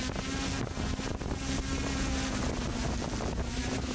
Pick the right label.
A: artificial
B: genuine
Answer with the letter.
B